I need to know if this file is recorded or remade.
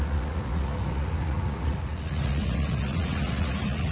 remade